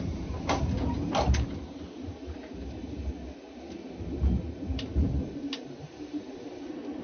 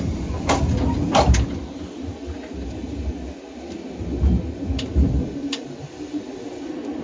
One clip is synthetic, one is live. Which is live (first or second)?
second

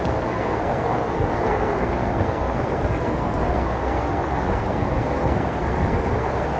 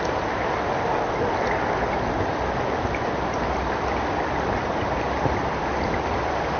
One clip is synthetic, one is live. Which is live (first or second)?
second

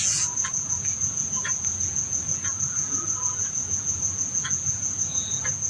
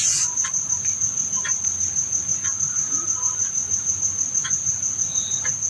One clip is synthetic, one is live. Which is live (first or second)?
second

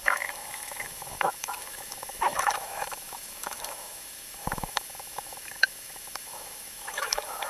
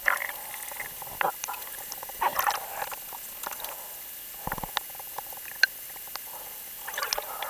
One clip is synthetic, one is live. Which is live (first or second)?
second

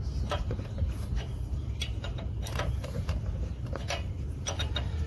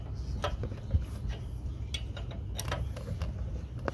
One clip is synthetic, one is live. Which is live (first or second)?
second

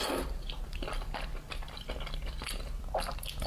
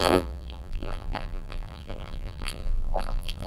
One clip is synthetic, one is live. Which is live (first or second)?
first